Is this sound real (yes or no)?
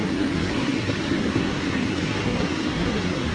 no